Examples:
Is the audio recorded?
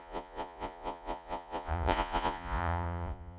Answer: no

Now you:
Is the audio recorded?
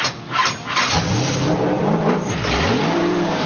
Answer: yes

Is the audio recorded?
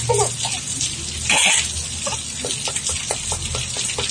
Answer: yes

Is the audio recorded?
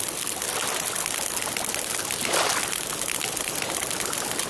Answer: yes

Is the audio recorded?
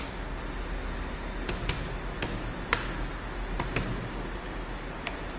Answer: yes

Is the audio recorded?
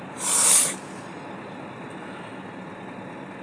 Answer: yes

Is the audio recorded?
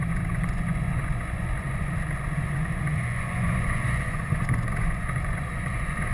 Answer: no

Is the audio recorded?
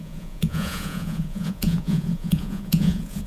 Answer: no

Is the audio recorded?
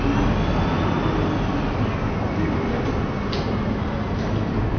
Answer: yes